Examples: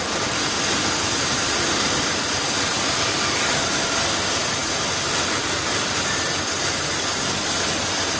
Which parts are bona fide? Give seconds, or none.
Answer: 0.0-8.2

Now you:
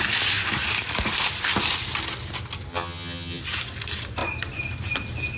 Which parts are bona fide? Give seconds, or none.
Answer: 0.0-2.7; 3.4-5.4

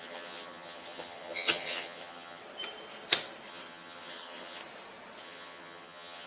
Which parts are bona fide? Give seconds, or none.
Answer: 2.4-3.5; 4.6-5.2

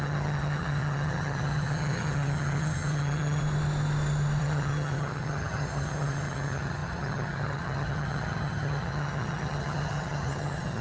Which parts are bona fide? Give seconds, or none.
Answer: 3.4-4.4

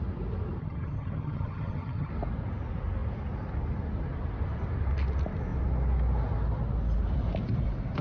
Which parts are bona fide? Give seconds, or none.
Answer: 0.0-0.6; 2.1-8.0

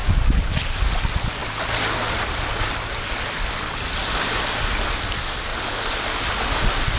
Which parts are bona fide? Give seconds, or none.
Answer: 0.0-7.0

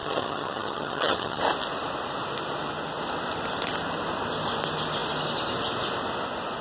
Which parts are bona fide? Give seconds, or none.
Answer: 1.4-6.6